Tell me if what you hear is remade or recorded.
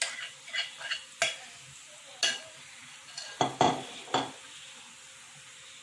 recorded